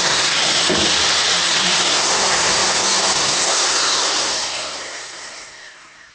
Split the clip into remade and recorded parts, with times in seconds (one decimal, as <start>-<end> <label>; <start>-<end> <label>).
0.0-0.6 remade; 0.6-1.5 recorded; 1.5-6.1 remade